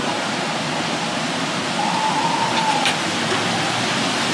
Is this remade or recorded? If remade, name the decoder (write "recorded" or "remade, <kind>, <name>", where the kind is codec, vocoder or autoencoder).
recorded